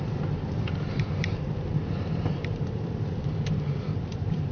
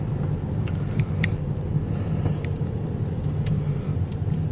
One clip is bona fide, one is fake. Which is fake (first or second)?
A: first